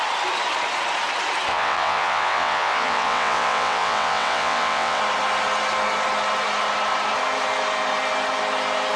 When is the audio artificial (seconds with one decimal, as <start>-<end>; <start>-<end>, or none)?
1.5-5.0